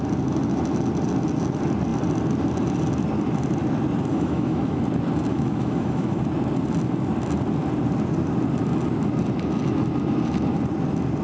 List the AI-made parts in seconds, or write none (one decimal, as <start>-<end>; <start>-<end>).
4.1-4.8; 5.3-6.2